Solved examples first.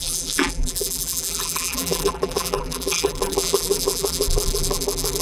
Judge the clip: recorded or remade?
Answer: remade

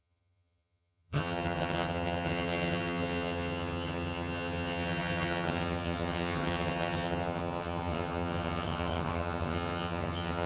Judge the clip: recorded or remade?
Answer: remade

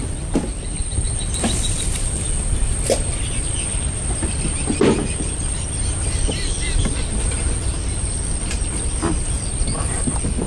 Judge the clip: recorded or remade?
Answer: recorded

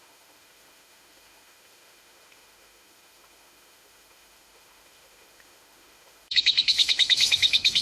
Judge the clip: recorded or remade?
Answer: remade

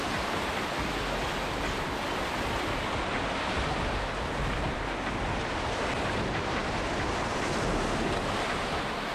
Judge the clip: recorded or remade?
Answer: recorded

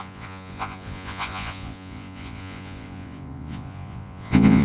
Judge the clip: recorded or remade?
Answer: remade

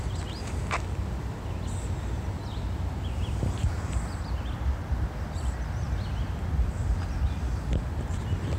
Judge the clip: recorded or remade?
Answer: recorded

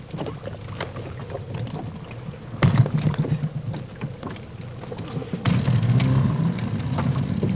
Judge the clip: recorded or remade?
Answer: recorded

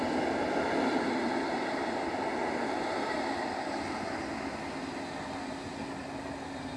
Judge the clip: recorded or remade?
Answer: recorded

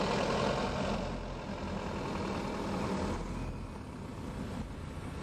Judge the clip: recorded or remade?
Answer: recorded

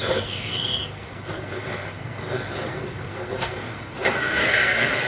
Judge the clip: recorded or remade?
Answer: remade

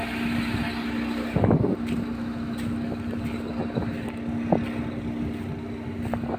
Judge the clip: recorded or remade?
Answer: recorded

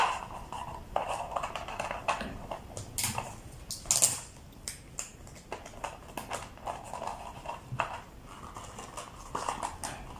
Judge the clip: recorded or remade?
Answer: recorded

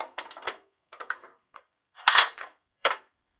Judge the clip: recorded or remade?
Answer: remade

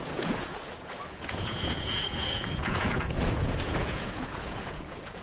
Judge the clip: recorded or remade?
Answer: remade